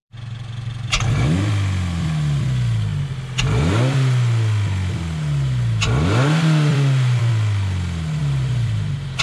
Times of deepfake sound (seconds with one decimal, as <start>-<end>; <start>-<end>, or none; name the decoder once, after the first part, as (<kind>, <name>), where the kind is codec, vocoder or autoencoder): 0.0-1.1 (vocoder, BigVGAN v2); 6.7-7.3; 8.2-9.2